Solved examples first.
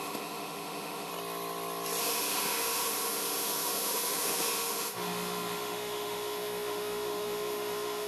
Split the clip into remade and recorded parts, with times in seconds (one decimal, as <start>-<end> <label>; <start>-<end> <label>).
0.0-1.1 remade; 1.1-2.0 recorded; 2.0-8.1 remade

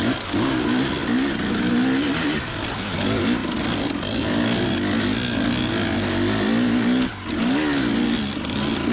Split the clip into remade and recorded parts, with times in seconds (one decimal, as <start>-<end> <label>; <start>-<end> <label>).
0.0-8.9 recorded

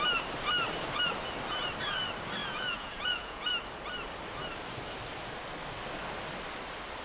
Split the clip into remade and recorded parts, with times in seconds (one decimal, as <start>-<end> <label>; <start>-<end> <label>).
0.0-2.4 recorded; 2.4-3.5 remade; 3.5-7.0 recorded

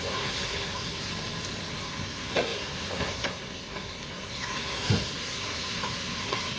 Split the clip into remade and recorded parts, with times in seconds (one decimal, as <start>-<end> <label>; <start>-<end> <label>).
0.0-1.1 remade; 1.1-1.7 recorded; 1.7-6.6 remade

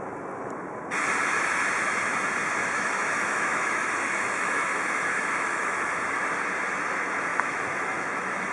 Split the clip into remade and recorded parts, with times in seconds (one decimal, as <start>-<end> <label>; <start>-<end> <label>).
0.0-2.6 recorded; 2.6-5.9 remade; 5.9-7.3 recorded; 7.3-8.5 remade

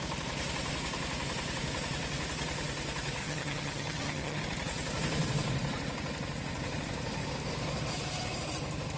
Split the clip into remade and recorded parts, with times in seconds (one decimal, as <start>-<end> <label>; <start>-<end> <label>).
0.0-3.2 recorded; 3.2-4.4 remade; 4.4-9.0 recorded